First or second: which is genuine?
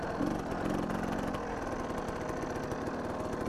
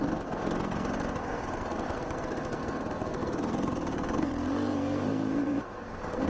first